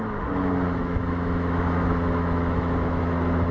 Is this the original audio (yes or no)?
no